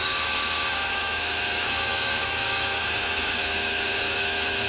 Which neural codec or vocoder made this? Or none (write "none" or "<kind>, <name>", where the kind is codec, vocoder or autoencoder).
autoencoder, DAC-VAE